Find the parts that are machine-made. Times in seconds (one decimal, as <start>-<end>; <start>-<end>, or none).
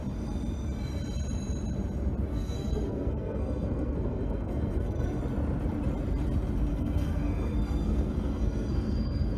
2.3-5.2; 6.7-9.4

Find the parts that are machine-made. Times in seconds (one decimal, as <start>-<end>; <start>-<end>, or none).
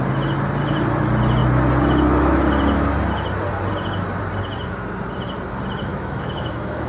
5.9-6.9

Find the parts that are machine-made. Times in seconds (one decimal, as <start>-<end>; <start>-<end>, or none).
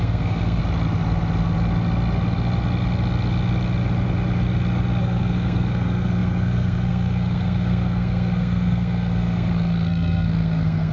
0.0-0.6; 5.0-10.9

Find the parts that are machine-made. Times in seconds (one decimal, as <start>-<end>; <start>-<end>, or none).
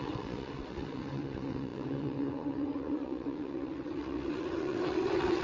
0.0-5.4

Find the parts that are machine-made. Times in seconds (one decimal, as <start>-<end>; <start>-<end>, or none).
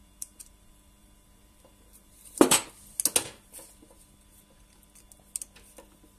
0.0-2.7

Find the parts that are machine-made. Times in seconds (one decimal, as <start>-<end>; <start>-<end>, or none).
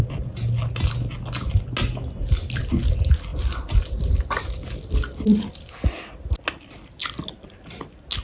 none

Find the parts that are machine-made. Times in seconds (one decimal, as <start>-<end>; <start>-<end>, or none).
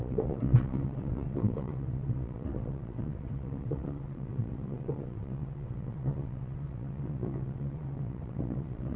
0.0-9.0